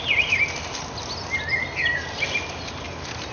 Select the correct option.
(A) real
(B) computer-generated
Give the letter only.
A